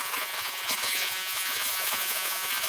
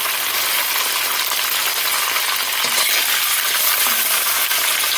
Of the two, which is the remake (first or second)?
first